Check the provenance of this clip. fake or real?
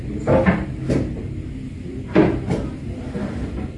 real